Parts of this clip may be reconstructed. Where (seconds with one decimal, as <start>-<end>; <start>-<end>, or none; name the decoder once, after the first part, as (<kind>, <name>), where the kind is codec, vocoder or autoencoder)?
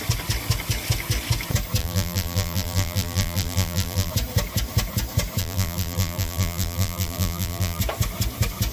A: 1.8-4.1 (vocoder, BigVGAN v2); 5.4-7.8